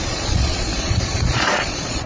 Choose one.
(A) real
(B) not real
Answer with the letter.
B